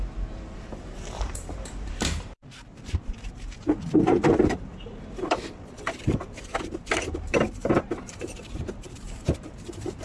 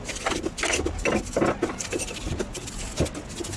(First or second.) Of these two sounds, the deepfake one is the first